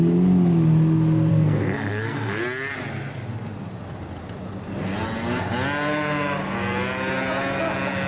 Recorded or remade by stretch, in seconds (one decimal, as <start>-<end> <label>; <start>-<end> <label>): 0.0-1.3 recorded; 1.3-2.4 remade; 2.4-8.1 recorded